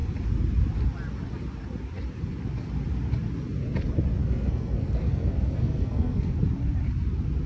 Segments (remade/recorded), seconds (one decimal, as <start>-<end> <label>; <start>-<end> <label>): 0.0-4.2 recorded; 4.2-6.3 remade; 6.3-7.5 recorded